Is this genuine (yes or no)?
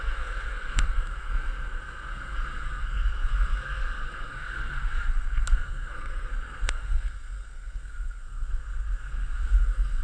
no